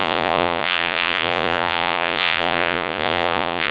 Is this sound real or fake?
fake